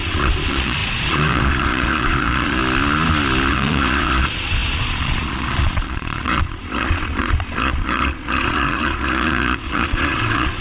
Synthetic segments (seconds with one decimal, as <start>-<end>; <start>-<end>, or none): 0.0-2.6; 3.5-10.6